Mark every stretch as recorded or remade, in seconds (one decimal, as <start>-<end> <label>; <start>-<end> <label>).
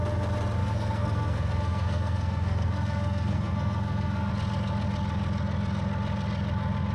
0.0-0.6 recorded; 0.6-4.3 remade; 4.3-6.9 recorded